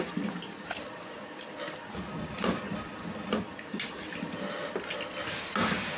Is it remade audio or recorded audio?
recorded